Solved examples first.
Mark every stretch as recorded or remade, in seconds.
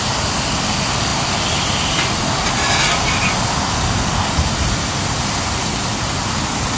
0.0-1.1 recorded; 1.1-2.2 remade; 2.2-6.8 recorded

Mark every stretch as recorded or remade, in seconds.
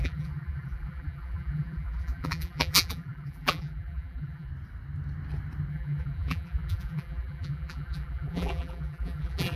0.0-4.5 remade; 4.5-5.7 recorded; 5.7-9.6 remade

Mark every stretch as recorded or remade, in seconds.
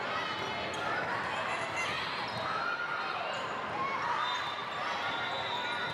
0.0-5.9 recorded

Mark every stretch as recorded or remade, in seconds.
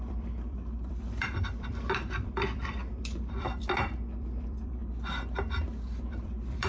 0.0-4.8 remade; 4.8-6.0 recorded; 6.0-6.7 remade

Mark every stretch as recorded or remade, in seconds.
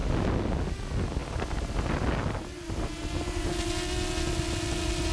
0.0-5.1 recorded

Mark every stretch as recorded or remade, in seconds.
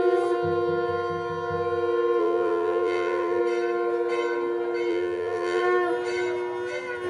0.0-2.2 recorded; 2.2-3.4 remade; 3.4-4.9 recorded; 4.9-5.6 remade; 5.6-7.1 recorded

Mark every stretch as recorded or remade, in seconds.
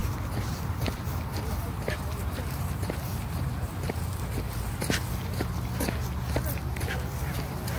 0.0-4.7 remade; 4.7-7.8 recorded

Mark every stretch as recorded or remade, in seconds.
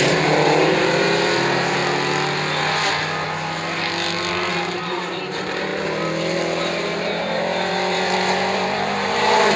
0.0-1.8 remade; 1.8-4.5 recorded; 4.5-5.7 remade; 5.7-6.6 recorded; 6.6-9.6 remade